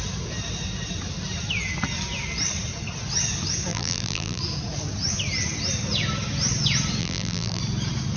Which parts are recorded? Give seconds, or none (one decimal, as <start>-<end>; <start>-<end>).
0.0-3.7; 4.4-7.0; 7.6-8.2